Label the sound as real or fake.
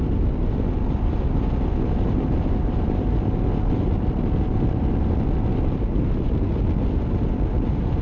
real